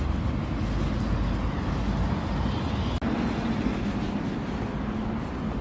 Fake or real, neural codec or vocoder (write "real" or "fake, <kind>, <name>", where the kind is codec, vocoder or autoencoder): real